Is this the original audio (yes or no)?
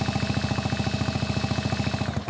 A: yes